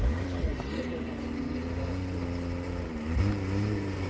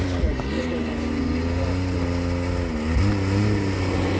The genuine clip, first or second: second